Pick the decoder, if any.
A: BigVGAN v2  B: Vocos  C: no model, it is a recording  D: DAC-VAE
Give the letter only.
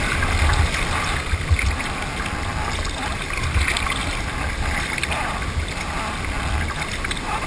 C